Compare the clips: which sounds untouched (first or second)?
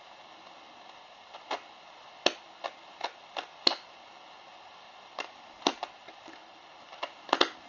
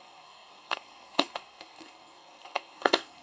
first